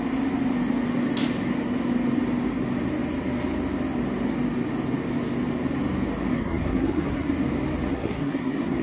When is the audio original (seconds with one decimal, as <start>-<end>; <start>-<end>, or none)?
0.0-6.3; 7.3-7.9